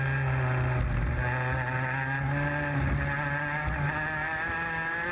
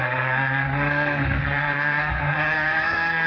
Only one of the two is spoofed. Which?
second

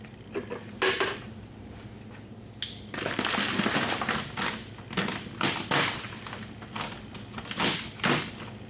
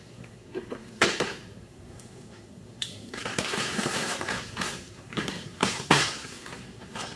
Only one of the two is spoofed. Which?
second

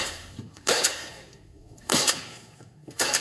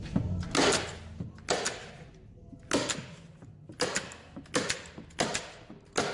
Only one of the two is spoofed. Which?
first